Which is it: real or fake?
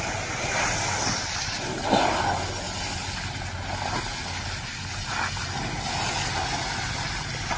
real